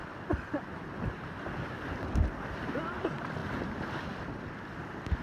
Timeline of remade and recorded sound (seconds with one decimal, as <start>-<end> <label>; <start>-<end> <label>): 0.0-5.2 recorded